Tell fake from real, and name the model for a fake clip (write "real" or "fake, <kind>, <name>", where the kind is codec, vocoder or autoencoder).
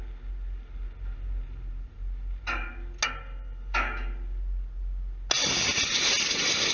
real